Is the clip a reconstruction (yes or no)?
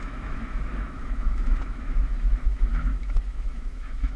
yes